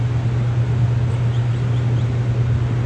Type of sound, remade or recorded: recorded